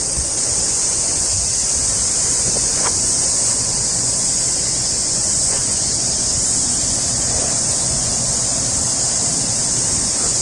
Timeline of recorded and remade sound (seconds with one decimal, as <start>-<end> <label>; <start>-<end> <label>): 0.0-1.5 remade; 1.5-2.2 recorded; 2.2-8.5 remade; 8.5-9.9 recorded; 9.9-10.4 remade